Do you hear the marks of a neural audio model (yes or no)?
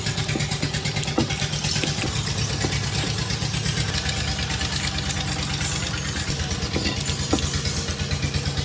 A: no